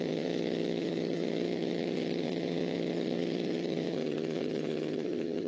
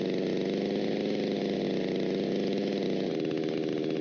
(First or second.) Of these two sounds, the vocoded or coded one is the first